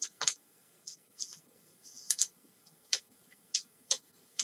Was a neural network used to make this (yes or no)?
yes